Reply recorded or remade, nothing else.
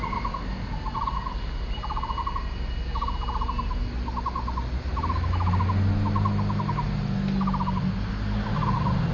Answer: recorded